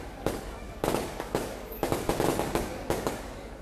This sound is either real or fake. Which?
fake